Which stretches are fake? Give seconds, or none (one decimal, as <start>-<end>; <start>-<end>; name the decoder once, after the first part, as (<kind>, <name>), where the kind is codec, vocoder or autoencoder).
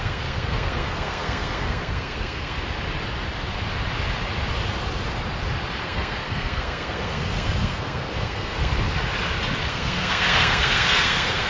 0.0-2.6 (codec, SNAC); 5.8-8.7; 9.6-11.5